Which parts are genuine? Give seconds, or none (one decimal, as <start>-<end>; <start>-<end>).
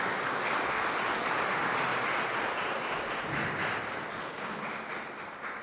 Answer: 0.0-5.6